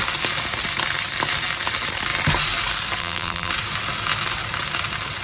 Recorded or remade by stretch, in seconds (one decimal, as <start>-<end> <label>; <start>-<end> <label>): 0.0-3.0 recorded; 3.0-3.5 remade; 3.5-5.2 recorded